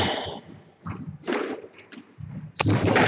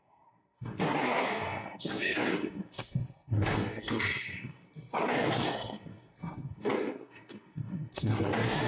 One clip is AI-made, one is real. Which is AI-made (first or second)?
second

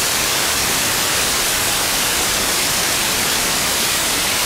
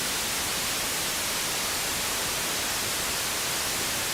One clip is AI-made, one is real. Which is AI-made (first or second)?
first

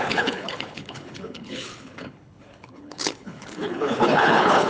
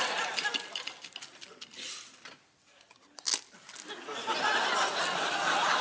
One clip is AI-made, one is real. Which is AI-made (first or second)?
first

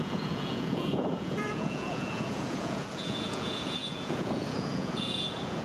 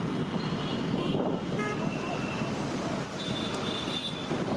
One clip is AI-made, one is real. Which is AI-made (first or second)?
first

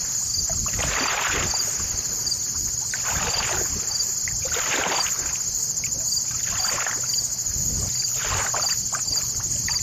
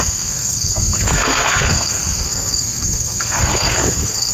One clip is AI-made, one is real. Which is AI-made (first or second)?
second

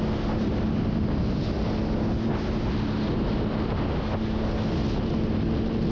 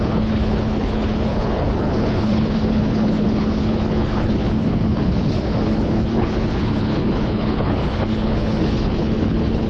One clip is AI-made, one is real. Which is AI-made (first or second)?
second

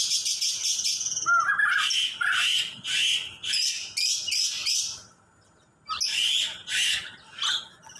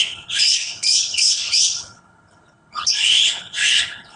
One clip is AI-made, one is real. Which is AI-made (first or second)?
second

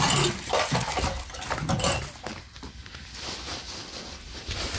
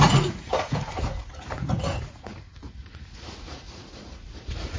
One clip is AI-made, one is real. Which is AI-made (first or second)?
second